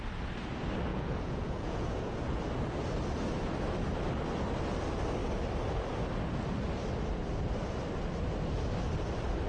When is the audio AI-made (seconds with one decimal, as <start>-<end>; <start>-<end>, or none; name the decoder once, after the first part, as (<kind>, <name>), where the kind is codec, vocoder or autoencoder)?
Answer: 0.9-2.4 (vocoder, Vocos)